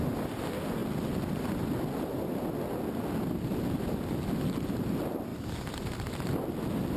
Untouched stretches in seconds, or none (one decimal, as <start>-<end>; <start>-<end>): 0.0-5.3; 6.3-7.0